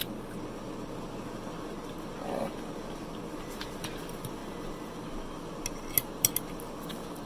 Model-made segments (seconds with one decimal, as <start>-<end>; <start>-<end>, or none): none